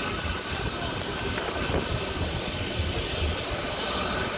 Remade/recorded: recorded